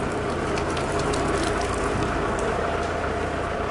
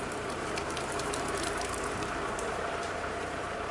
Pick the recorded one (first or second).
first